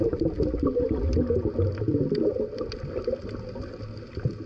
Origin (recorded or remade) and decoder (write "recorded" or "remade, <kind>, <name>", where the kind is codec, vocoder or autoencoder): recorded